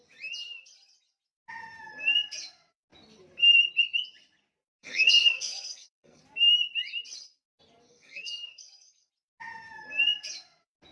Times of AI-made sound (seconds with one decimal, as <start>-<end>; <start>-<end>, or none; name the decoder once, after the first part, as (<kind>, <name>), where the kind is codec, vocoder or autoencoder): 4.8-6.2 (codec, SNAC); 7.9-9.1